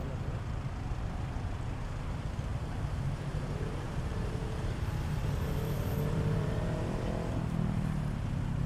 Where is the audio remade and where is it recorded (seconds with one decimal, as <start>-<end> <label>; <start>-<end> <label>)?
0.0-2.5 recorded; 2.5-7.0 remade; 7.0-8.7 recorded